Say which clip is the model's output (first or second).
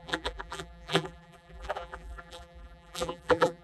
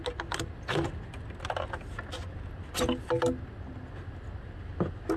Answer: first